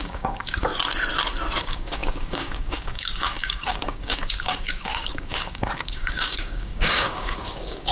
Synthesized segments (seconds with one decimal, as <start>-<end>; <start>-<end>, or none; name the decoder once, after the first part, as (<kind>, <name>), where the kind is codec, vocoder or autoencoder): 0.0-0.7 (codec, DAC); 1.6-7.9